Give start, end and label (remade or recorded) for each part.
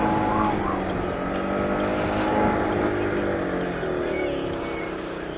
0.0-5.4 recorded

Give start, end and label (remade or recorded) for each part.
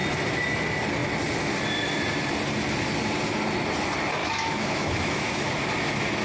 0.0-4.2 recorded; 4.2-5.5 remade; 5.5-6.2 recorded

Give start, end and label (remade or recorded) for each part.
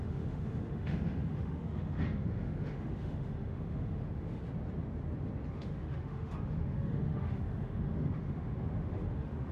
0.0-4.4 remade; 4.4-5.5 recorded; 5.5-9.5 remade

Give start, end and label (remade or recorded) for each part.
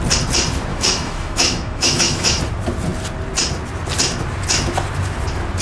0.0-0.7 recorded; 0.7-2.4 remade; 2.4-5.6 recorded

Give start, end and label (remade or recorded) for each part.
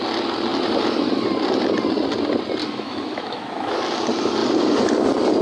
0.0-2.6 recorded; 2.6-3.8 remade; 3.8-5.4 recorded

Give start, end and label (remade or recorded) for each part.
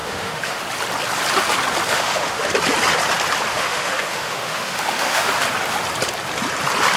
0.0-0.6 remade; 0.6-1.9 recorded; 1.9-2.5 remade; 2.5-3.5 recorded; 3.5-5.3 remade; 5.3-7.0 recorded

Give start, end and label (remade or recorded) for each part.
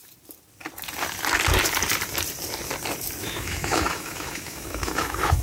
0.0-3.2 recorded; 3.2-5.4 remade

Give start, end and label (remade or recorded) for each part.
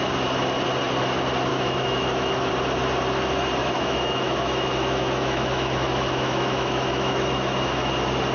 0.0-1.5 recorded; 1.5-2.5 remade; 2.5-3.6 recorded; 3.6-7.9 remade; 7.9-8.3 recorded